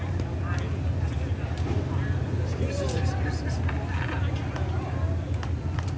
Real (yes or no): yes